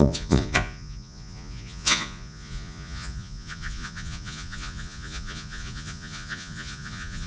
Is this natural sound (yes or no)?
no